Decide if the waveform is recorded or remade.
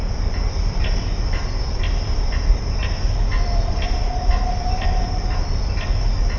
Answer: recorded